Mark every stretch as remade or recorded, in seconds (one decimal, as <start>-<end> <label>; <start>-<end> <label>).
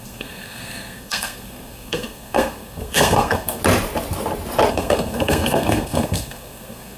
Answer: 0.0-3.6 remade; 3.6-4.7 recorded; 4.7-7.0 remade